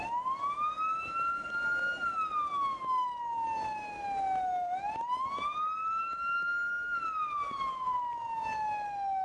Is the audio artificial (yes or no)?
no